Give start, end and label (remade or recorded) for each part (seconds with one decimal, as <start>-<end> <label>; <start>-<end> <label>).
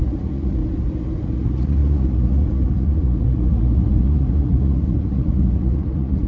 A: 0.0-0.6 remade; 0.6-1.2 recorded; 1.2-6.3 remade